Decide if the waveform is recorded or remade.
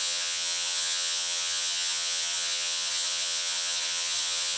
remade